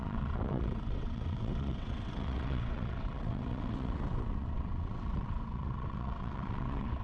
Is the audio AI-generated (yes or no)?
yes